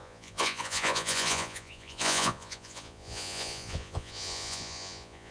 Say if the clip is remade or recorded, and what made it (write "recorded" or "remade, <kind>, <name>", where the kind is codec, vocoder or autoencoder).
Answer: remade, vocoder, Vocos